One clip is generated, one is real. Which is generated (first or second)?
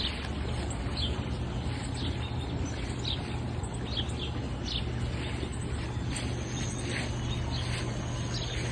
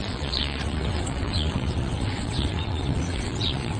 second